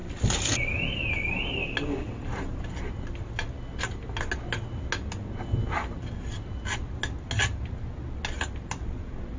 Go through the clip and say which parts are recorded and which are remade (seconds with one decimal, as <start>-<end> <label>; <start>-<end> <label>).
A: 0.0-9.4 recorded